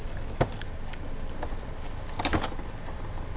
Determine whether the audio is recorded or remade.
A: recorded